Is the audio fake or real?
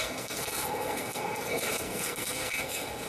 fake